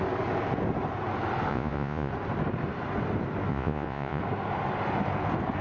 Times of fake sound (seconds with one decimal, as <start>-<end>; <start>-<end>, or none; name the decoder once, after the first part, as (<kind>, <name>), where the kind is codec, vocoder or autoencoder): 1.5-2.1 (vocoder, Vocos); 3.5-4.2